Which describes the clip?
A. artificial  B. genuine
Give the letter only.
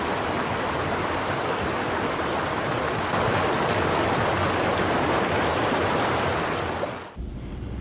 B